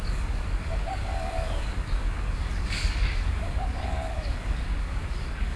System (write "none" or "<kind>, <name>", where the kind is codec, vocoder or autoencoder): codec, DAC